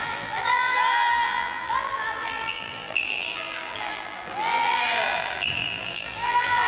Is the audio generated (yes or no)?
yes